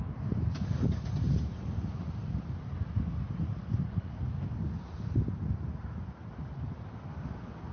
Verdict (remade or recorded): recorded